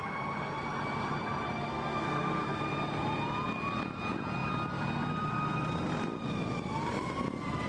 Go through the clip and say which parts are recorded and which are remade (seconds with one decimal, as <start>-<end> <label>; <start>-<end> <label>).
0.0-1.7 recorded; 1.7-2.6 remade; 2.6-7.7 recorded